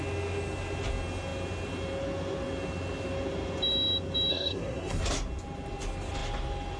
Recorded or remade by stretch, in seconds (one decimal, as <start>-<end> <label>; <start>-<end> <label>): 0.0-4.3 recorded; 4.3-5.0 remade; 5.0-6.8 recorded